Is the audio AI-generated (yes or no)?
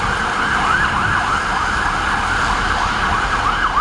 yes